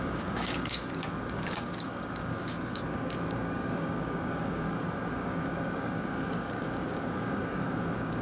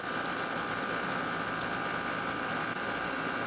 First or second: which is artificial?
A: first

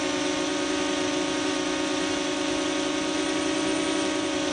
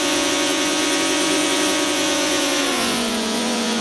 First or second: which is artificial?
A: second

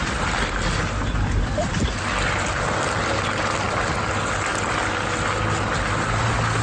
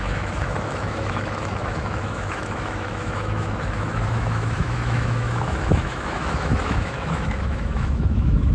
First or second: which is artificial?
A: second